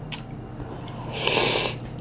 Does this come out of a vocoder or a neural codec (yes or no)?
no